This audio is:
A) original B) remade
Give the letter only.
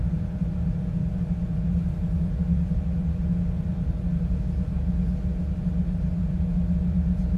A